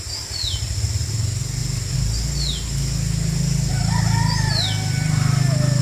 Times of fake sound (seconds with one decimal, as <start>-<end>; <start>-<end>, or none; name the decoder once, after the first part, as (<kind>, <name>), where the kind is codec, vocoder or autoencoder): none